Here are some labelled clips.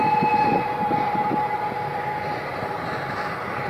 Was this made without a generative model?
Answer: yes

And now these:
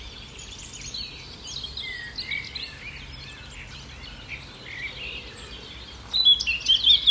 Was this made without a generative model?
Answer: yes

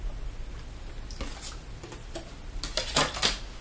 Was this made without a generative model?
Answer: yes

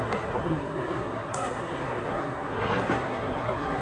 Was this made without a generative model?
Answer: no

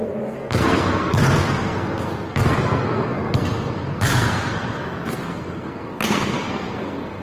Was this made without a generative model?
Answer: no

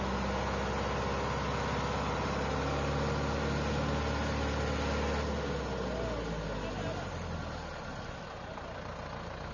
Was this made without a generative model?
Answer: yes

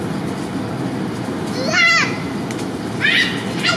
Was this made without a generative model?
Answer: yes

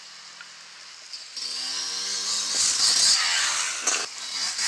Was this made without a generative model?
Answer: yes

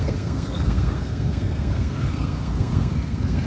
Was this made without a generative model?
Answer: no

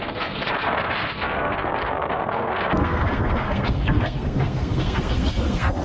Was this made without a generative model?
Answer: no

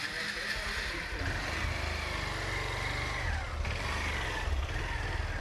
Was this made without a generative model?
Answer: yes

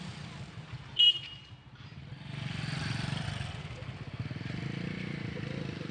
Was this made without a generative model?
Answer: yes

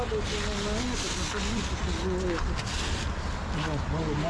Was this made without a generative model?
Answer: yes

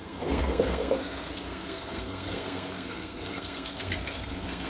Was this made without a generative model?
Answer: no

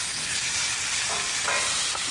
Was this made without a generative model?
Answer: yes